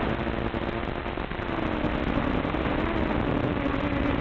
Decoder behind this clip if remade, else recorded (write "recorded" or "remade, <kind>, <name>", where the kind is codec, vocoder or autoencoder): recorded